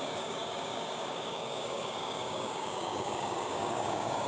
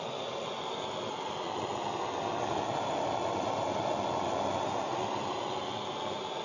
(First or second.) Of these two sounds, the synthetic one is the first